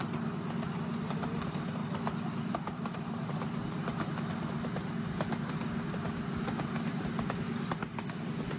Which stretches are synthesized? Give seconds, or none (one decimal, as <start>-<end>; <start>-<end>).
1.8-2.9